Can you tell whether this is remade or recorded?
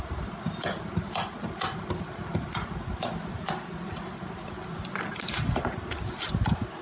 recorded